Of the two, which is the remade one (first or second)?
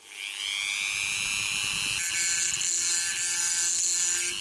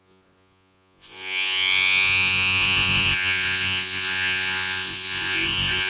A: second